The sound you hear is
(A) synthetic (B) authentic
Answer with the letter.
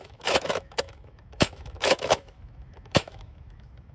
A